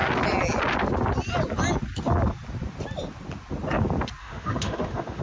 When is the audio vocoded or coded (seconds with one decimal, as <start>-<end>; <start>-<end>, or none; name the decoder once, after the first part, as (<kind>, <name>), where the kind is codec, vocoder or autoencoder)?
4.2-5.2 (autoencoder, DAC-VAE)